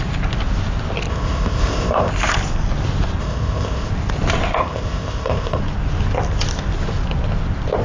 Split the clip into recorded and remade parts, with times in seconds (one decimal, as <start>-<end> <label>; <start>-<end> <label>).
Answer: 0.0-1.1 recorded; 1.1-2.1 remade; 2.1-3.2 recorded; 3.2-3.9 remade; 3.9-4.6 recorded; 4.6-5.6 remade; 5.6-7.8 recorded

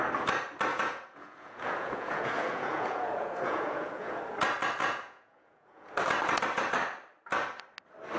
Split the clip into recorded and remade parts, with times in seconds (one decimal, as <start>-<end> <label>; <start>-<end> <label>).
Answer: 0.0-0.7 recorded; 0.7-4.2 remade; 4.2-4.8 recorded; 4.8-5.9 remade; 5.9-8.2 recorded

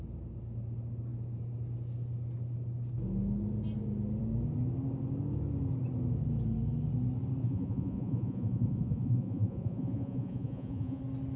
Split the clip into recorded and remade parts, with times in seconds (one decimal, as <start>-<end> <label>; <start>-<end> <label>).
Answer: 0.0-7.4 recorded; 7.4-11.0 remade; 11.0-11.4 recorded

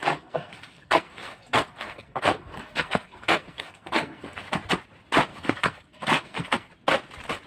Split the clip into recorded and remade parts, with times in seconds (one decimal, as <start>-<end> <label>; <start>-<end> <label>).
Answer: 0.0-4.5 remade; 4.5-5.3 recorded; 5.3-6.7 remade; 6.7-7.5 recorded